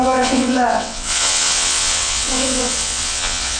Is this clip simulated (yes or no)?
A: yes